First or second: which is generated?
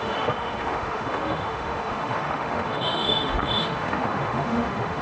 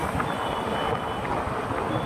first